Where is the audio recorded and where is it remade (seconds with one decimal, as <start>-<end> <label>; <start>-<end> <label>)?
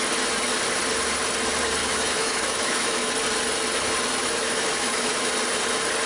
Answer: 0.0-1.8 recorded; 1.8-3.1 remade; 3.1-4.2 recorded; 4.2-5.3 remade; 5.3-6.1 recorded